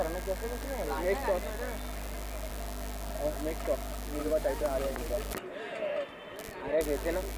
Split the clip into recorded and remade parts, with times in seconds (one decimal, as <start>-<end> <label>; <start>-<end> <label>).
0.0-4.2 recorded; 4.2-5.1 remade; 5.1-7.4 recorded